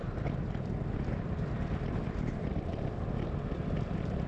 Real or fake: fake